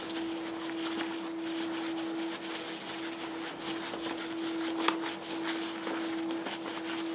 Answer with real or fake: real